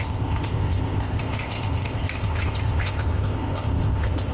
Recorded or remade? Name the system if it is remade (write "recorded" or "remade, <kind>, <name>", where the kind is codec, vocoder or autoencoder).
remade, codec, ZipCodec